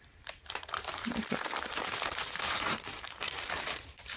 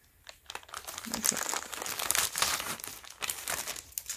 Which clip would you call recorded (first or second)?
second